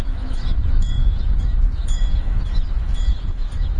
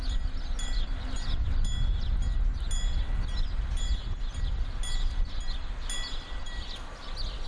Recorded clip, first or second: second